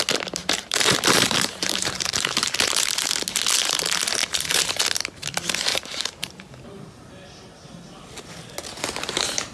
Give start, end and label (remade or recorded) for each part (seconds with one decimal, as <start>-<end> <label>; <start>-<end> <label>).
0.0-0.4 recorded; 0.4-3.1 remade; 3.1-4.2 recorded; 4.2-4.8 remade; 4.8-5.7 recorded; 5.7-6.5 remade; 6.5-9.5 recorded